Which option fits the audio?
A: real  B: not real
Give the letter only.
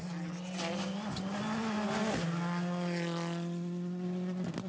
A